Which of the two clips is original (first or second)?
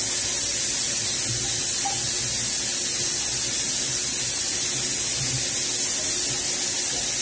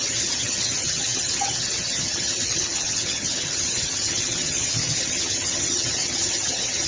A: first